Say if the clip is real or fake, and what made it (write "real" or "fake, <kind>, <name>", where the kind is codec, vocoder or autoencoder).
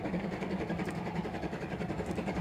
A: fake, codec, DAC